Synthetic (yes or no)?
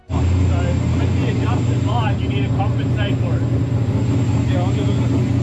no